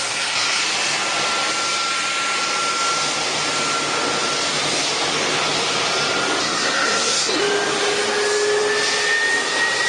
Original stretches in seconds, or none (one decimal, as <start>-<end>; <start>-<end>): 0.6-6.4; 7.4-9.9